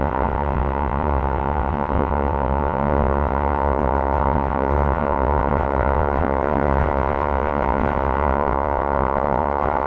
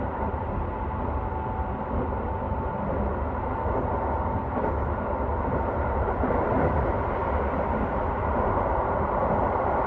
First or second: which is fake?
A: first